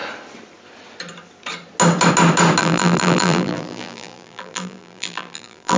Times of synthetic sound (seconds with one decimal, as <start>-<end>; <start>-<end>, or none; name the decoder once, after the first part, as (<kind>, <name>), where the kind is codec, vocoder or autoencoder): 2.6-5.8 (vocoder, BigVGAN v2)